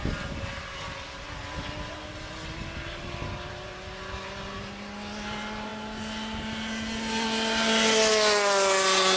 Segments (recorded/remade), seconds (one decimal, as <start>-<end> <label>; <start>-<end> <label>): 0.0-9.2 recorded